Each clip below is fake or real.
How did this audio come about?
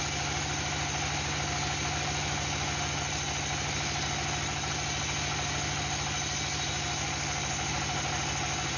real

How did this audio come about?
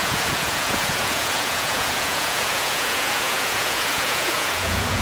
fake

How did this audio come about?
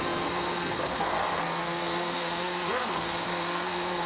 fake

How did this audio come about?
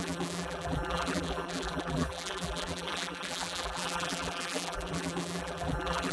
fake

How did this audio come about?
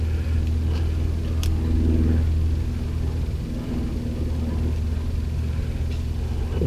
real